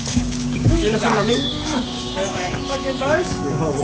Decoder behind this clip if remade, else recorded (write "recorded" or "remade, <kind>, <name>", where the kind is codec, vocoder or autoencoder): remade, codec, DAC